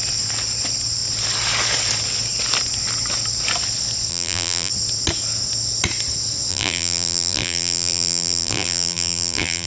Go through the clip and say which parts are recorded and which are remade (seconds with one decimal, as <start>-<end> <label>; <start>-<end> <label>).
0.0-4.1 recorded; 4.1-4.7 remade; 4.7-6.5 recorded; 6.5-9.7 remade